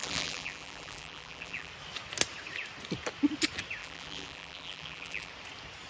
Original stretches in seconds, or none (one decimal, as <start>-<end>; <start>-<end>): 1.7-3.8; 5.3-5.9